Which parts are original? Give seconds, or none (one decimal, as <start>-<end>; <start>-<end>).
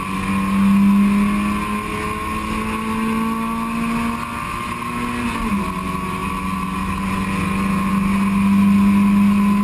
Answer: 0.0-9.6